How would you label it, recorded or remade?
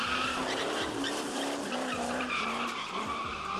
remade